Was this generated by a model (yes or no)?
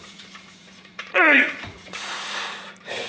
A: yes